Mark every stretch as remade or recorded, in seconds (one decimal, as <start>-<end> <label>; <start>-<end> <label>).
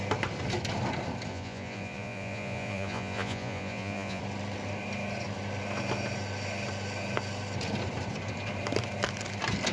0.0-1.3 recorded; 1.3-4.2 remade; 4.2-9.7 recorded